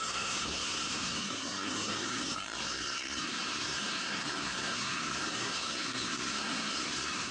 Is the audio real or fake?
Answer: fake